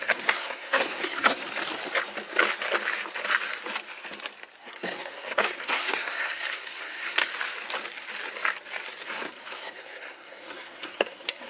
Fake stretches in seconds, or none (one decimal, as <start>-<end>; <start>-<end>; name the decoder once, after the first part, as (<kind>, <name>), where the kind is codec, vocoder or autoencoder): 0.0-1.4 (codec, SNAC); 4.6-7.3; 9.0-11.5

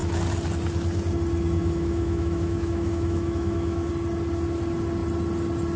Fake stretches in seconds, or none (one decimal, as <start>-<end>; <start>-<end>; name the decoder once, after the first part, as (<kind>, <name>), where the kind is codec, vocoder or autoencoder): 1.6-3.9 (autoencoder, DAC-VAE)